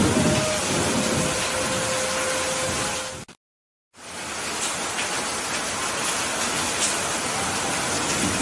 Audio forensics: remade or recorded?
recorded